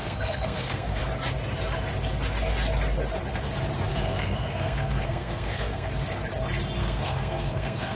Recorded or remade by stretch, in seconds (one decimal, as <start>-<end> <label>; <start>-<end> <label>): 0.0-1.0 remade; 1.0-3.9 recorded; 3.9-5.9 remade; 5.9-6.8 recorded; 6.8-8.0 remade